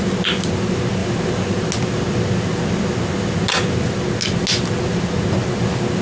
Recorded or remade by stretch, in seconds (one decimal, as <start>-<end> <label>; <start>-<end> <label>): 0.0-6.0 recorded